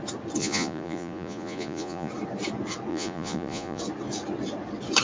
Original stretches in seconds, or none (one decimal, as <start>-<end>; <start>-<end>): 0.0-0.4; 2.1-2.9; 3.8-5.0